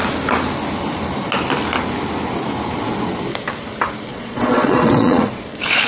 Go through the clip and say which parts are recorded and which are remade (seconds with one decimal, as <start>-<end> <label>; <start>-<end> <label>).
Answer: 0.0-4.1 recorded; 4.1-5.3 remade; 5.3-5.9 recorded